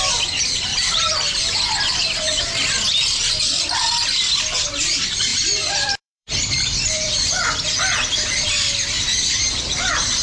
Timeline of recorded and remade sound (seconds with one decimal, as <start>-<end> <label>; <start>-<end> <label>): 0.0-0.7 recorded; 0.7-2.4 remade; 2.4-3.2 recorded; 3.2-3.8 remade; 3.8-5.3 recorded; 5.3-7.8 remade; 7.8-10.2 recorded